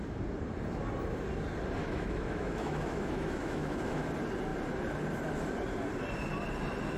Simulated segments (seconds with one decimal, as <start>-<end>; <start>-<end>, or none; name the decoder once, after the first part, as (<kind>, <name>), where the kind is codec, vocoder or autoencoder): 1.8-4.1 (autoencoder, DAC-VAE)